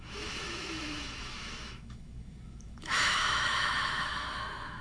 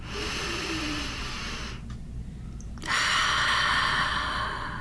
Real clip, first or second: second